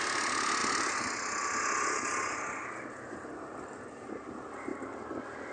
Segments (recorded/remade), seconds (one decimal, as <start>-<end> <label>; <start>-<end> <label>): 0.0-5.5 recorded